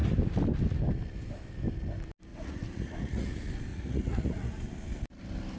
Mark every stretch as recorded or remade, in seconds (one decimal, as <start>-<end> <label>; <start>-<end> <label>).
0.0-2.3 recorded; 2.3-3.3 remade; 3.3-3.7 recorded; 3.7-4.5 remade; 4.5-5.6 recorded